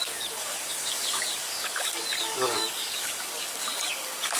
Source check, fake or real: fake